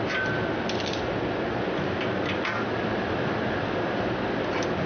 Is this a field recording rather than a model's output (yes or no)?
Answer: yes